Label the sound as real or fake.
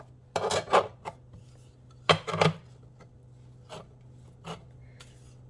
real